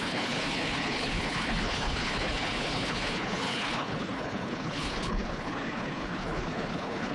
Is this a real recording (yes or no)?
no